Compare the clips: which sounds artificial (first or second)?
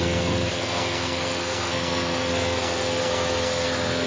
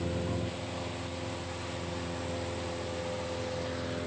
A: first